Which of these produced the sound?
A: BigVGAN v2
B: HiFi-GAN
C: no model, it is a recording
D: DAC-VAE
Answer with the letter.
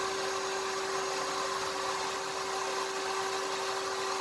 C